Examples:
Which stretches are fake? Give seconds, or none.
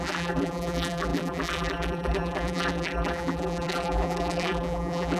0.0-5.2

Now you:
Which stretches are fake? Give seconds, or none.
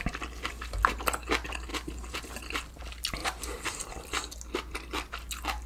3.2-3.8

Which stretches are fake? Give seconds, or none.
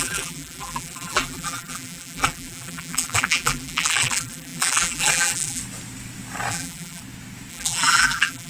0.0-5.6; 6.5-7.0; 7.5-8.5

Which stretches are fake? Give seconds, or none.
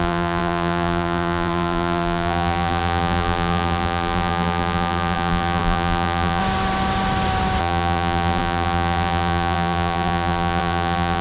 0.0-6.4; 7.6-11.2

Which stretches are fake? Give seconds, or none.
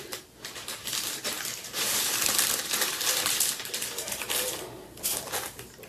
0.0-5.9